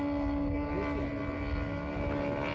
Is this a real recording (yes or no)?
yes